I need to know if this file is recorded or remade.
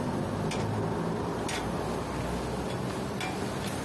recorded